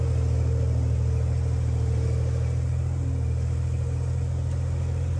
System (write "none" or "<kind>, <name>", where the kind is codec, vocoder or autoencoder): none